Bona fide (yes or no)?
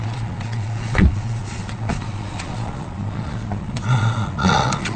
no